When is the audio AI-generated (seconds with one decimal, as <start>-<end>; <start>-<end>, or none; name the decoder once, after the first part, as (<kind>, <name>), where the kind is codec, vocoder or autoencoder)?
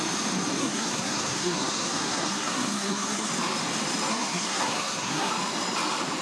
0.6-3.3 (codec, SNAC); 4.1-5.3